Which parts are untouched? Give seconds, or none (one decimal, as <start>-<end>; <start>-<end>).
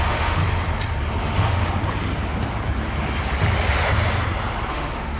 0.4-1.2; 1.6-4.7